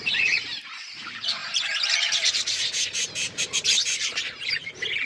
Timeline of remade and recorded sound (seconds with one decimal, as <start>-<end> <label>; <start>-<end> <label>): 0.0-1.4 recorded; 1.4-4.5 remade; 4.5-5.1 recorded